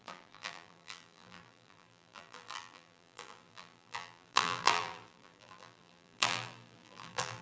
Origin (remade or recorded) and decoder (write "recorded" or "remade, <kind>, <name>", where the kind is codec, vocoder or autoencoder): remade, vocoder, BigVGAN v2